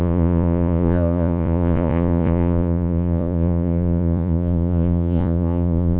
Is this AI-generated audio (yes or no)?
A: yes